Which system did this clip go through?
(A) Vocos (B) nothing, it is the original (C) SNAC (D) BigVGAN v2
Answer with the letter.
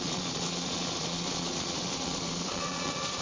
A